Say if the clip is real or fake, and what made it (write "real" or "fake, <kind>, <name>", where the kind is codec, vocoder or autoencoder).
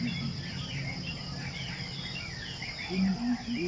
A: real